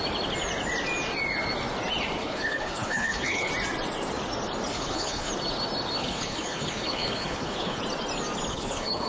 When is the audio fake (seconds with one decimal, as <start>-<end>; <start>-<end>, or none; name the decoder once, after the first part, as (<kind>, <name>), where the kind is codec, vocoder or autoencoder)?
2.2-3.5 (codec, HILCodec); 4.7-5.3; 6.0-7.8; 8.5-9.1